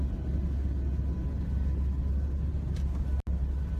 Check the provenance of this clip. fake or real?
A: real